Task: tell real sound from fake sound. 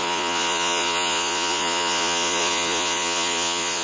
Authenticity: fake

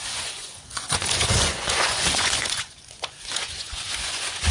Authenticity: fake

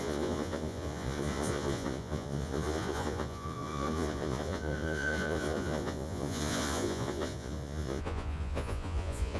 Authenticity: fake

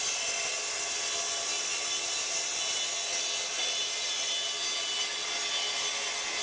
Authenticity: real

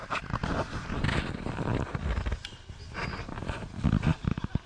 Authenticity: real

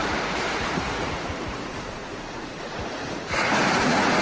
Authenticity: fake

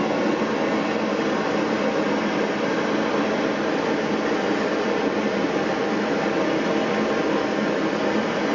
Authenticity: real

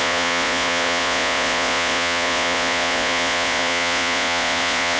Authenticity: fake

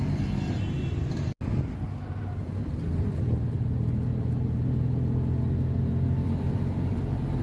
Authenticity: real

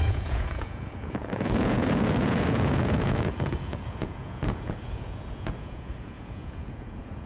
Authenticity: fake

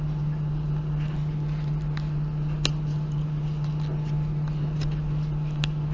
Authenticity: real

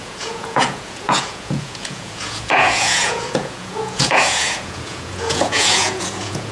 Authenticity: fake